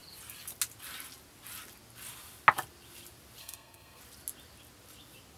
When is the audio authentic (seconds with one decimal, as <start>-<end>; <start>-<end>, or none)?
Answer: 0.0-3.4; 4.0-5.4